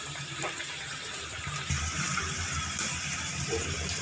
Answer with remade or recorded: remade